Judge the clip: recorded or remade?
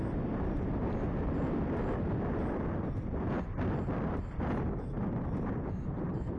recorded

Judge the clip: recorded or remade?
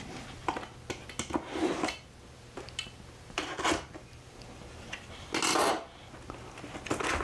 recorded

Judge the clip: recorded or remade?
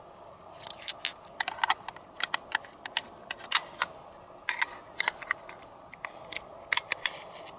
recorded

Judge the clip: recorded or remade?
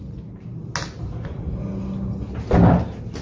recorded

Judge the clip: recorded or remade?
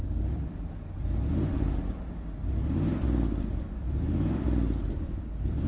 remade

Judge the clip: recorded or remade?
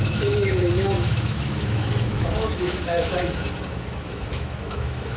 remade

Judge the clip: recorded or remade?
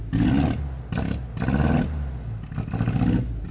recorded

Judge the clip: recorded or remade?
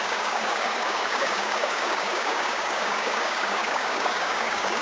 remade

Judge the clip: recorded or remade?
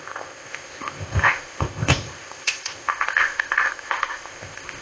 remade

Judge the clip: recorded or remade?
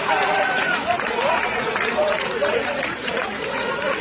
remade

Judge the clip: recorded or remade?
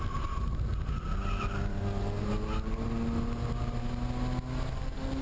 recorded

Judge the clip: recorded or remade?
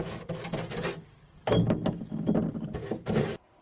recorded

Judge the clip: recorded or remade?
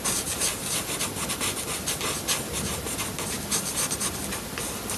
recorded